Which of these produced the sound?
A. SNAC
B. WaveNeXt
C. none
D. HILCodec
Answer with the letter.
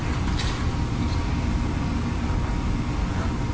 C